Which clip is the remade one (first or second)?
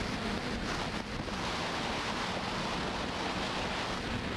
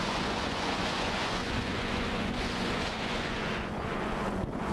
second